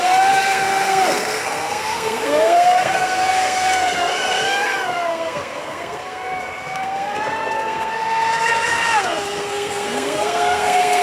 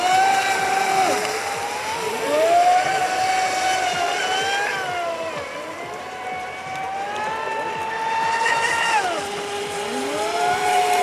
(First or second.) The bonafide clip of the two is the second